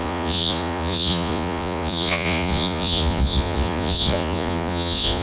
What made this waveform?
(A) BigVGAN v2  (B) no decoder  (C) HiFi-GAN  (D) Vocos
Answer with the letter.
D